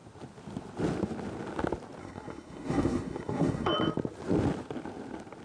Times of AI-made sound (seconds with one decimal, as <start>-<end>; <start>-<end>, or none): 2.0-3.7